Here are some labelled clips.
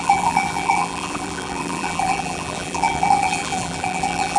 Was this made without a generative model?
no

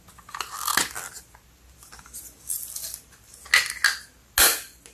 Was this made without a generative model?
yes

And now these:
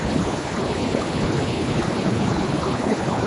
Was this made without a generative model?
no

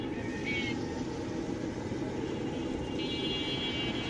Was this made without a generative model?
yes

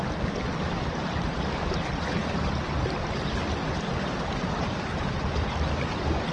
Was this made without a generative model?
yes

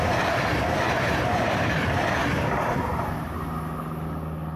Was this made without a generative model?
yes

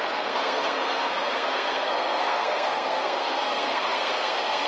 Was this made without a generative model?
no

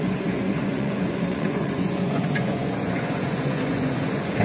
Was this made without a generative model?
no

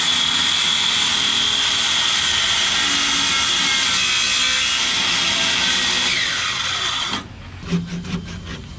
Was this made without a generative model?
yes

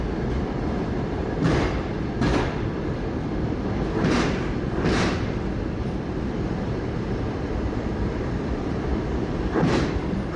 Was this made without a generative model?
no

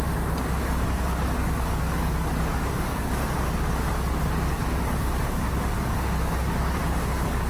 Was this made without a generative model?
no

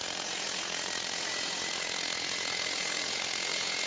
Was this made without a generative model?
no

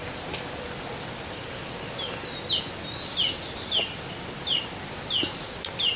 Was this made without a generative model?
yes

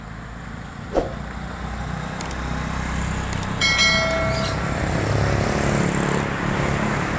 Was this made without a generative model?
yes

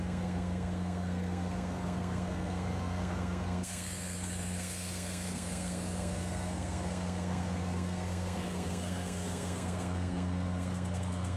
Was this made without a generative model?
no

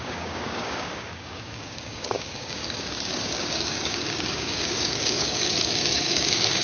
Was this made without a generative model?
no